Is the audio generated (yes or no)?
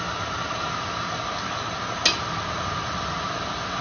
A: no